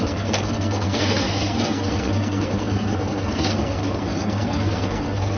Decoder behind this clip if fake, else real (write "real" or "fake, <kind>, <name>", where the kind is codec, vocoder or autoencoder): fake, codec, SNAC